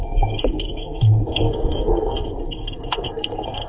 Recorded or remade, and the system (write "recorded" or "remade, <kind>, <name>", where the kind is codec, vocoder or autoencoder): remade, codec, SNAC